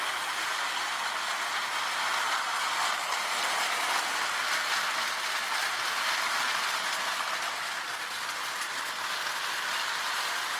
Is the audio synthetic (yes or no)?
no